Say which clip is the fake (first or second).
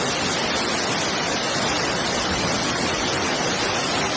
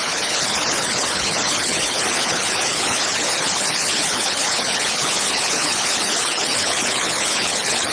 second